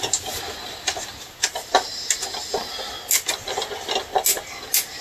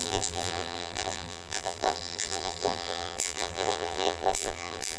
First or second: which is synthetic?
second